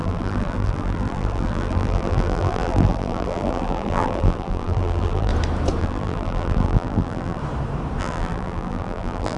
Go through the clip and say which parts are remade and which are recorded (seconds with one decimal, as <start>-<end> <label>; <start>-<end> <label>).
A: 0.0-5.3 remade; 5.3-5.8 recorded; 5.8-7.4 remade; 7.4-8.0 recorded; 8.0-9.4 remade